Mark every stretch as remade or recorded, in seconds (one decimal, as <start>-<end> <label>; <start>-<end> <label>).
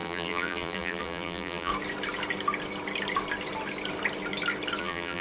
0.0-1.7 remade; 1.7-4.8 recorded; 4.8-5.2 remade